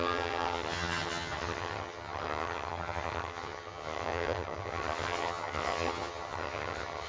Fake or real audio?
fake